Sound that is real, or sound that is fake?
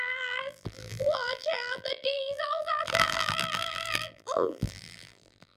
fake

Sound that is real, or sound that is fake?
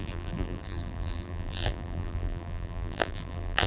fake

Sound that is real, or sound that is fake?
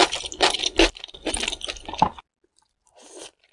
real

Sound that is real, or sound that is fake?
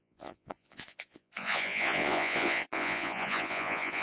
fake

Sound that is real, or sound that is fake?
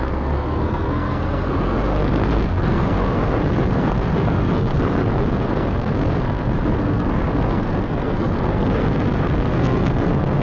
fake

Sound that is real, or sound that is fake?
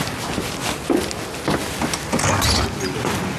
real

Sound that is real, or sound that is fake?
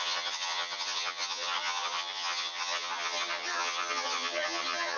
fake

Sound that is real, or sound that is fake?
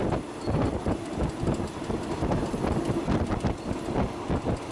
real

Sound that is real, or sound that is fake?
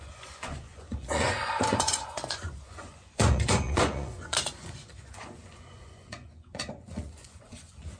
fake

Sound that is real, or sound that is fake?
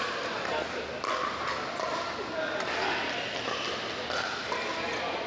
real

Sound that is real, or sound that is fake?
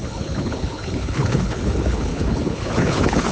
fake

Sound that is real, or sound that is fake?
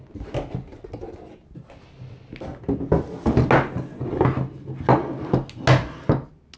real